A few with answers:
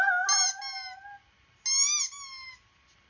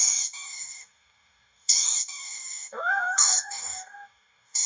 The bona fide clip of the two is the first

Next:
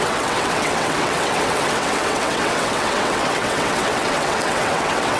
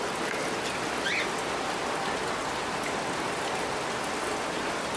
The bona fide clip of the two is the second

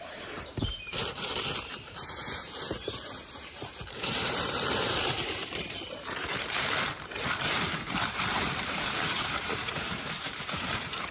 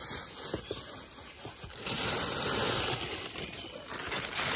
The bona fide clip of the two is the second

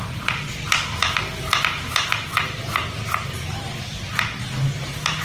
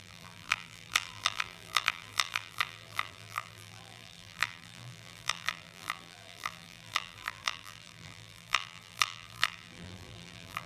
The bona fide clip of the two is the first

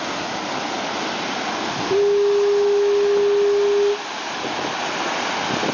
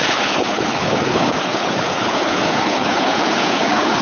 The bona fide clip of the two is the first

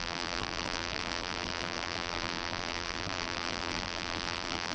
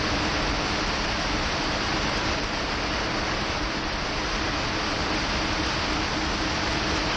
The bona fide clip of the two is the second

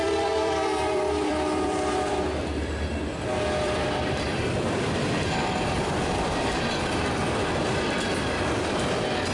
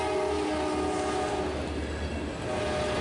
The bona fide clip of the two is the second